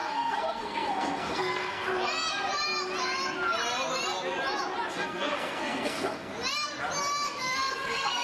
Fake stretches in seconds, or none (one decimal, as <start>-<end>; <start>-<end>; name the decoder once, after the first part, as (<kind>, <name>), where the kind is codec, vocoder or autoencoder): 0.0-1.9 (codec, SNAC); 4.9-6.3; 7.4-8.2